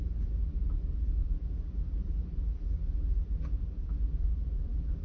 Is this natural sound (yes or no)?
yes